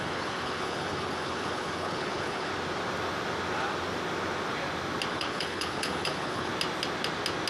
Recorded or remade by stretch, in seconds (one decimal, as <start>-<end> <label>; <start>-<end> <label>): 0.0-2.5 remade; 2.5-5.1 recorded; 5.1-6.5 remade; 6.5-7.5 recorded